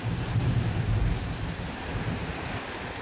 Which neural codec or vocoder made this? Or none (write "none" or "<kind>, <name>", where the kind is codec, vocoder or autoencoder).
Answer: none